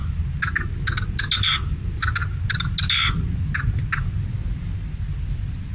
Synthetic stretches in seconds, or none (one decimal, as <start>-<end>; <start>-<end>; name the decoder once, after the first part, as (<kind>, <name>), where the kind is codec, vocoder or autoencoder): none